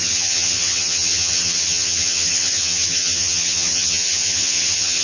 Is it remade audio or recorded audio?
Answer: remade